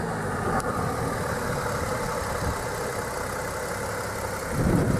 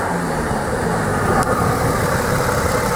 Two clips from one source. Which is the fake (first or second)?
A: second